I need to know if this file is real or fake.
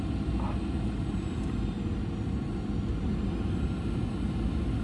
real